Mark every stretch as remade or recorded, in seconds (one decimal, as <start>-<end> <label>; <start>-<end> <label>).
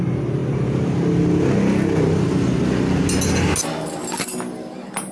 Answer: 0.0-5.1 recorded